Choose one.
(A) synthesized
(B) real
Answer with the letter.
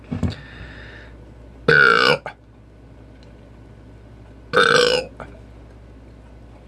B